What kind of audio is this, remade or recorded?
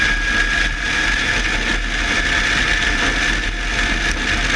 recorded